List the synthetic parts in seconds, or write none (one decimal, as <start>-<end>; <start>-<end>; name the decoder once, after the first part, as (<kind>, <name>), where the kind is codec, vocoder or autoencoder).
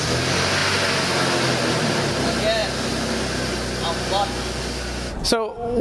none